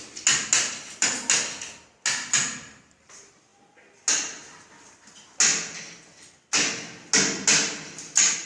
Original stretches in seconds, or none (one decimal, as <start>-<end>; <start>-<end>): 0.0-8.5